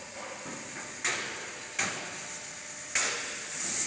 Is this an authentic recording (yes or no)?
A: yes